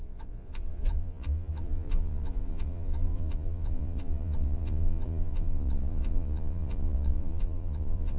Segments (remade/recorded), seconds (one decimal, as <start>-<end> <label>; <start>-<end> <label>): 0.0-8.2 remade